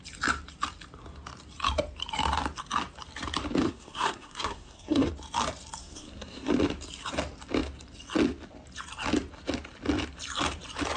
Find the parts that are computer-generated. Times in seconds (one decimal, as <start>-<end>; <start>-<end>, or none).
3.6-5.1; 5.8-6.5